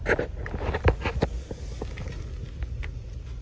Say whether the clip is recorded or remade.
recorded